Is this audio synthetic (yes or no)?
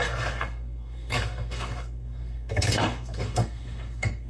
yes